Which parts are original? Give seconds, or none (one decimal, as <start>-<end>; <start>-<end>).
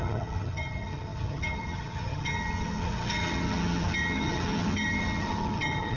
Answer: none